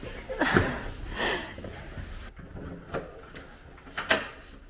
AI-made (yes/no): no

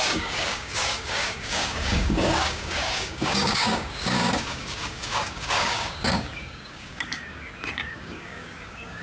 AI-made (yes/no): yes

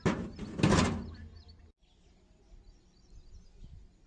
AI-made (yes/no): no